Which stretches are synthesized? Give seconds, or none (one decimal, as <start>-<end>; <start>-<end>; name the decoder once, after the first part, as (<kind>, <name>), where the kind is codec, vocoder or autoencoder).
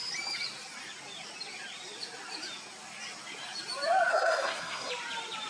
4.1-4.9 (codec, SNAC)